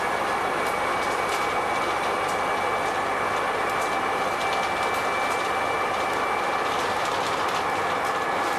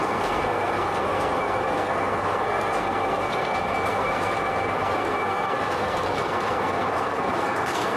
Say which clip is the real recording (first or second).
first